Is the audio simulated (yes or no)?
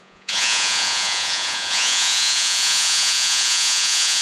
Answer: yes